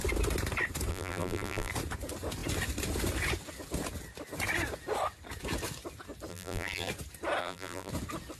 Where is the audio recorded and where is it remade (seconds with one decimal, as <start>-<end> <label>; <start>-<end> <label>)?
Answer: 0.0-0.9 recorded; 0.9-1.7 remade; 1.7-6.3 recorded; 6.3-6.9 remade; 6.9-7.4 recorded; 7.4-7.9 remade; 7.9-8.4 recorded